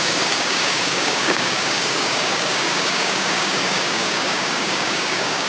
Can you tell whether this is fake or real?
fake